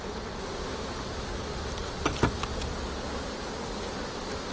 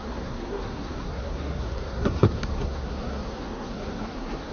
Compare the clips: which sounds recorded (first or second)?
first